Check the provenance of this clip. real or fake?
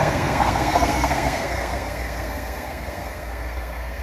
fake